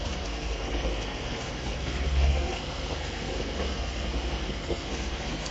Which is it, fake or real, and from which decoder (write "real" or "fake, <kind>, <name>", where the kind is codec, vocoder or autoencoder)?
fake, codec, SNAC